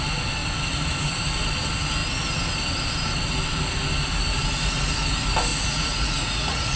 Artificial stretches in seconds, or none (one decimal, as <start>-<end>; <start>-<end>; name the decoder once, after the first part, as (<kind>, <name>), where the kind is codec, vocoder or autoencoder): 5.5-6.8 (vocoder, Vocos)